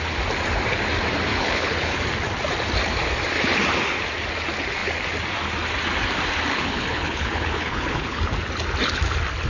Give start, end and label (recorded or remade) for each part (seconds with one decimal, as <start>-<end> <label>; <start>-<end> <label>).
0.0-1.3 recorded; 1.3-2.0 remade; 2.0-6.5 recorded; 6.5-8.2 remade; 8.2-9.5 recorded